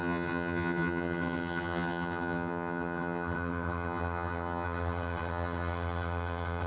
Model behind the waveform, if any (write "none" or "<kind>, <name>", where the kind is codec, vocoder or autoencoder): vocoder, HiFi-GAN